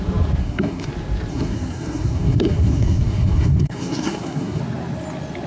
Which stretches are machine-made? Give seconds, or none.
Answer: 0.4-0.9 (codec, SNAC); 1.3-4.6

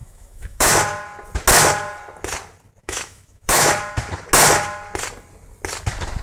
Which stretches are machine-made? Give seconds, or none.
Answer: 0.0-0.7 (autoencoder, DAC-VAE); 2.8-3.7

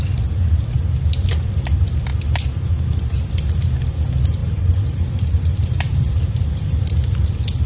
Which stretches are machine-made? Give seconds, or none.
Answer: 4.4-6.1 (vocoder, BigVGAN v2)

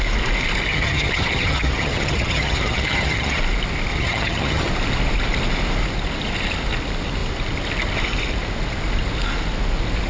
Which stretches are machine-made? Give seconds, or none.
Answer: 0.7-3.4 (vocoder, HiFi-GAN); 3.9-4.7

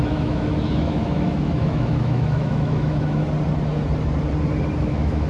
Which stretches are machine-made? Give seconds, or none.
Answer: 0.0-3.2 (autoencoder, DAC-VAE); 4.8-5.3

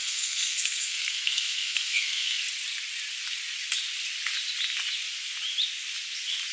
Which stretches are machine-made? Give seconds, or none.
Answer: 0.0-2.4 (codec, SNAC)

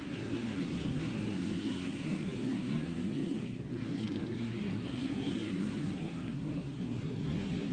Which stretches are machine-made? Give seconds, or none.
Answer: 0.0-7.7 (codec, SNAC)